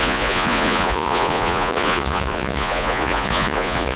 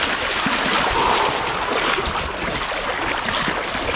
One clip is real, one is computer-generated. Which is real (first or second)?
second